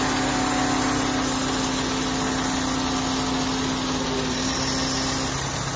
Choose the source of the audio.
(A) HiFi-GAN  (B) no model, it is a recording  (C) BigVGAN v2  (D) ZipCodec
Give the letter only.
B